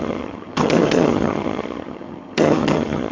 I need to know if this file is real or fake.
fake